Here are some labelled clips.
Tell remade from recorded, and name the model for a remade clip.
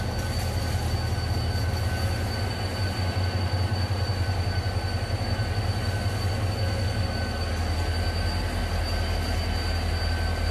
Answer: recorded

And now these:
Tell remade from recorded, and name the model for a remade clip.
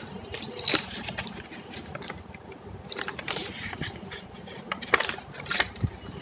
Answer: recorded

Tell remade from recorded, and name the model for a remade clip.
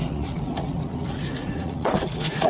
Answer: remade, vocoder, Vocos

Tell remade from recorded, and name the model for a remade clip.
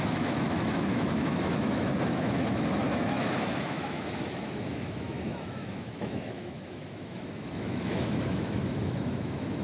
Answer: remade, autoencoder, DAC-VAE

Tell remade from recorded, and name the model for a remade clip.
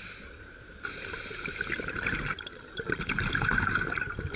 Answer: recorded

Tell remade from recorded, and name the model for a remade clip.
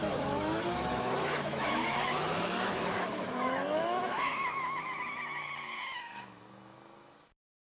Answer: remade, autoencoder, DAC-VAE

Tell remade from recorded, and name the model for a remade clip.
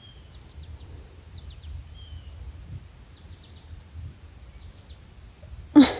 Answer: recorded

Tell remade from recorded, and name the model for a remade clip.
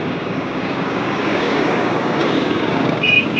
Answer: remade, codec, DAC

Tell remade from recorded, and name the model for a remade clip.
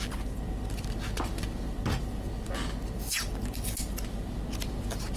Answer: recorded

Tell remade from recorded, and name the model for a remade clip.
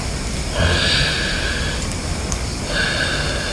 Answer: recorded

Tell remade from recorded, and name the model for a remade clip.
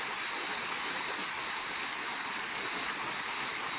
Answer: recorded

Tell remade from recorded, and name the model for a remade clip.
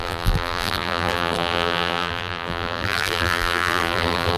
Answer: remade, vocoder, BigVGAN v2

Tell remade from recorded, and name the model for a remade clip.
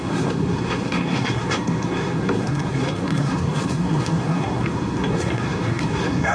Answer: remade, codec, SNAC